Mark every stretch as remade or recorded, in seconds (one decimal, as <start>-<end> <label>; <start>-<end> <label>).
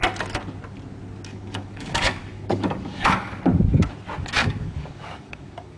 0.0-1.3 recorded; 1.3-3.4 remade; 3.4-4.4 recorded; 4.4-5.8 remade